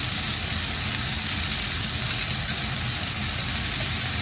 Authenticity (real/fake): real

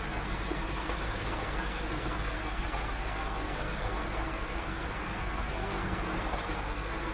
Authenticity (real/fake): fake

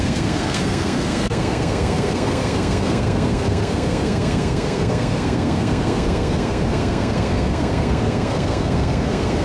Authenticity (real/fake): fake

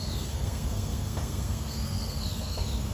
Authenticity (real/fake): fake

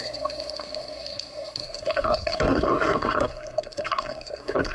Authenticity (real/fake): fake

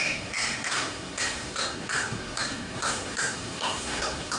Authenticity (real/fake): fake